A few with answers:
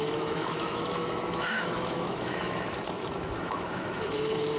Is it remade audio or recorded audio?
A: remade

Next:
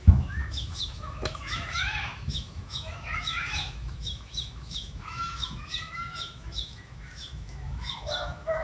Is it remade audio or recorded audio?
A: remade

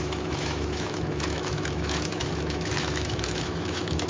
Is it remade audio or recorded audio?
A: remade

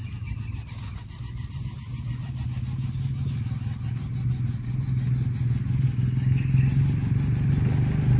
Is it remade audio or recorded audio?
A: recorded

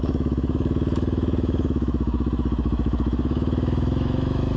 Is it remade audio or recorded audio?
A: remade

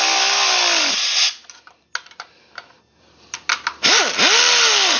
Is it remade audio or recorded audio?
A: recorded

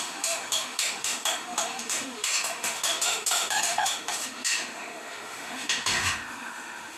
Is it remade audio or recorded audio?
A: remade